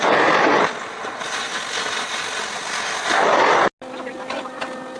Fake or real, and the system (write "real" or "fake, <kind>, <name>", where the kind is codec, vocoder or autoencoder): real